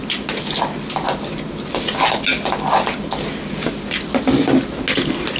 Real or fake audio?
real